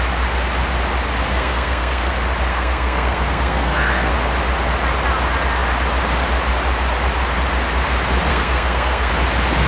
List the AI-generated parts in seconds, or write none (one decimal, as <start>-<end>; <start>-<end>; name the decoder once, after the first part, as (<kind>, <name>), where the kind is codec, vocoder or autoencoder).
1.3-2.1 (codec, SNAC); 2.5-4.1; 8.3-9.1